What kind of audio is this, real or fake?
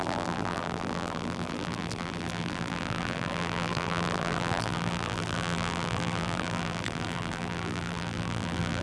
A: fake